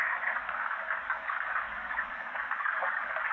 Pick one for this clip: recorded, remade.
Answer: remade